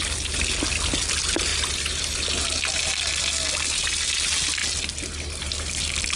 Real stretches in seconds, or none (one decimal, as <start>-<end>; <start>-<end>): 0.0-6.2